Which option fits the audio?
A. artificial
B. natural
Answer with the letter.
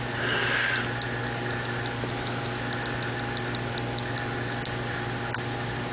B